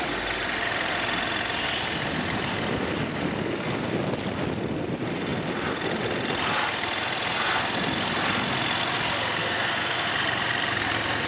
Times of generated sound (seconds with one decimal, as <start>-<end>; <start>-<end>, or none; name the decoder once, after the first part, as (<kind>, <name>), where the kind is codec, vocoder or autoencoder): 9.4-10.1 (codec, SNAC)